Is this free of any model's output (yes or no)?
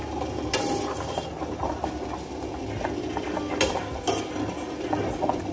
yes